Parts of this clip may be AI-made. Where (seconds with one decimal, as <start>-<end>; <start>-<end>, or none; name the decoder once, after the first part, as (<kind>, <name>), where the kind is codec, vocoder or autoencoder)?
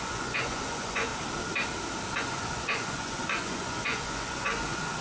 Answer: 0.0-1.1 (vocoder, Vocos); 2.2-5.0